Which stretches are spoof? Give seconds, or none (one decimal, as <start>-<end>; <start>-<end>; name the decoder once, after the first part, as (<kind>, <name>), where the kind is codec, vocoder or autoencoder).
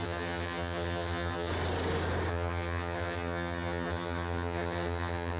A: 0.0-1.5 (vocoder, HiFi-GAN); 2.3-5.4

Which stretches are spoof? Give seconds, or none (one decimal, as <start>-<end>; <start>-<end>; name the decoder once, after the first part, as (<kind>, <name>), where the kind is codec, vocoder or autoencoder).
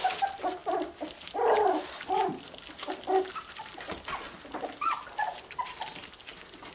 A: none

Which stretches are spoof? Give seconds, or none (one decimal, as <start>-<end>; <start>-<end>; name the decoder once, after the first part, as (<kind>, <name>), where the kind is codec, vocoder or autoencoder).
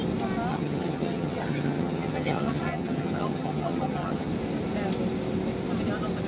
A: 0.5-4.3 (vocoder, HiFi-GAN)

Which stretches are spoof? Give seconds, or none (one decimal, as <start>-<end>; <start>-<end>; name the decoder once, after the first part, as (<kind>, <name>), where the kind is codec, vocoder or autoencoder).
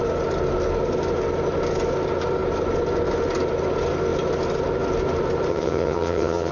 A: 5.5-6.5 (vocoder, HiFi-GAN)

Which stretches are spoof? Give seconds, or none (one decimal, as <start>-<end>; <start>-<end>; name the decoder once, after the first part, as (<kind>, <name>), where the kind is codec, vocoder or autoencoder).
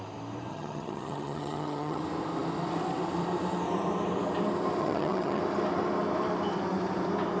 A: 0.5-2.0 (vocoder, HiFi-GAN); 4.8-5.4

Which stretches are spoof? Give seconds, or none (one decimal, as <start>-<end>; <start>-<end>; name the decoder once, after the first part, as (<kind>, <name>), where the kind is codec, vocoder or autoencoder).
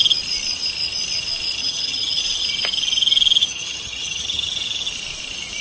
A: 1.6-2.2 (vocoder, HiFi-GAN); 3.4-4.5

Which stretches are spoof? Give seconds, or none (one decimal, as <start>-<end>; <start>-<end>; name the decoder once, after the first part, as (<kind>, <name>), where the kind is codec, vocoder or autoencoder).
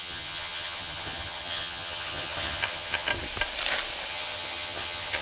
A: 0.0-3.1 (vocoder, HiFi-GAN); 4.1-5.2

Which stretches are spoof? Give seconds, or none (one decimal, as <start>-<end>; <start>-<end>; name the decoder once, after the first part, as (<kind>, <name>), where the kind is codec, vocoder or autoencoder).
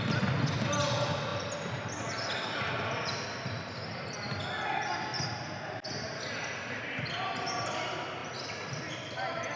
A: none